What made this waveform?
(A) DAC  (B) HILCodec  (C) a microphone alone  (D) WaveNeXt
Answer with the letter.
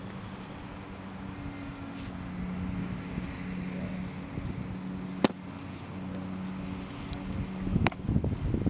C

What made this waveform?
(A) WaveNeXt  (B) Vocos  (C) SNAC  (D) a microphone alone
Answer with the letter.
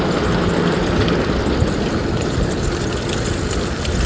D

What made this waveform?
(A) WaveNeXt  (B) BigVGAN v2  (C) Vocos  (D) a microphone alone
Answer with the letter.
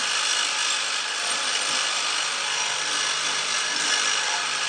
D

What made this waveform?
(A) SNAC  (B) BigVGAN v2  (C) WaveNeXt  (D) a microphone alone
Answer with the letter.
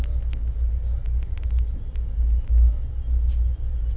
D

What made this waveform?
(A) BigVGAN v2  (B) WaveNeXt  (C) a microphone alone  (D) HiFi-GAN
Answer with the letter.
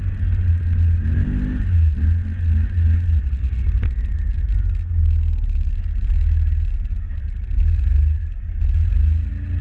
C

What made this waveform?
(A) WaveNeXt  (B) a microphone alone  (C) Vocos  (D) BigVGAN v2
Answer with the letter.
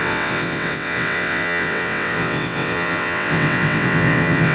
A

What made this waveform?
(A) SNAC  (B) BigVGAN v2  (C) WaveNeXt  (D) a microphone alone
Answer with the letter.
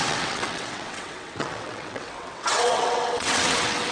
C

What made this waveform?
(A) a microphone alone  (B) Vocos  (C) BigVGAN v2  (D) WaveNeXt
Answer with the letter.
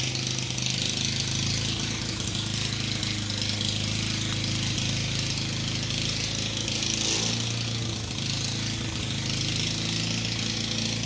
A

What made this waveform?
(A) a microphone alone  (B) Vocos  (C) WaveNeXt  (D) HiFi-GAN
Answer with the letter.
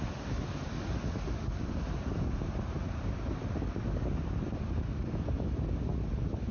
A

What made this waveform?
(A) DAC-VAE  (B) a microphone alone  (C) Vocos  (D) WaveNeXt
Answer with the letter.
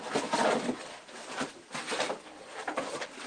B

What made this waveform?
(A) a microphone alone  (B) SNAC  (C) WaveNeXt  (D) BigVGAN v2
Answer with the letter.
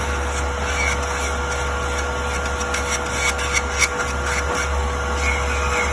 A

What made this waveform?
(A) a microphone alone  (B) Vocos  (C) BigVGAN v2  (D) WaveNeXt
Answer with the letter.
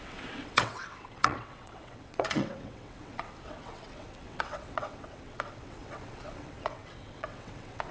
D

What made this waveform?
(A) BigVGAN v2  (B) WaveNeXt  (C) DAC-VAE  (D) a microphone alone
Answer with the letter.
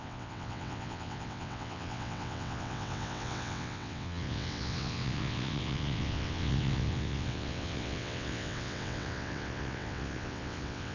B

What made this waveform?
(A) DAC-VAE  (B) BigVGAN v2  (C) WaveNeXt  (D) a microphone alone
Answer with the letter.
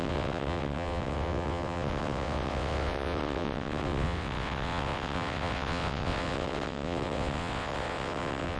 C